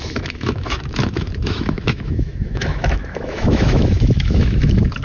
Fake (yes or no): yes